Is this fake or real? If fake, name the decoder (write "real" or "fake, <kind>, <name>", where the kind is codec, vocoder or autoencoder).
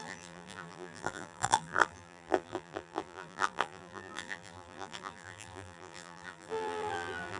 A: fake, vocoder, BigVGAN v2